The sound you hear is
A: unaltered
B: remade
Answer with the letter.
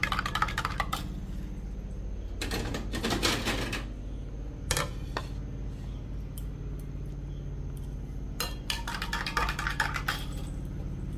A